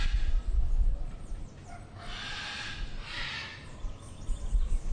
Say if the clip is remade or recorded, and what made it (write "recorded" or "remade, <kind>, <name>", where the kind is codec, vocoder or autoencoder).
recorded